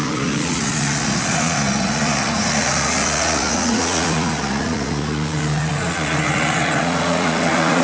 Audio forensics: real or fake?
fake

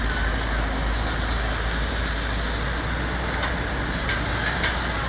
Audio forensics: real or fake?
real